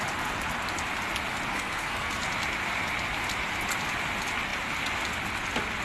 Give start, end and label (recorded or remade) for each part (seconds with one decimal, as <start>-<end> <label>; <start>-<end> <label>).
0.0-1.5 recorded; 1.5-2.2 remade; 2.2-5.8 recorded